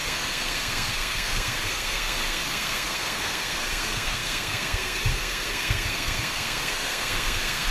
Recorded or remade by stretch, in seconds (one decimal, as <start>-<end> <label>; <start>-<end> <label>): 0.0-7.7 remade